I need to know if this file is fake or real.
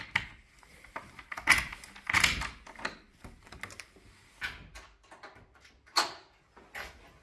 real